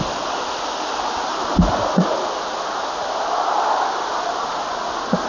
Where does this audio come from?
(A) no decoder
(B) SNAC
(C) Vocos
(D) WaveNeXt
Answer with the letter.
A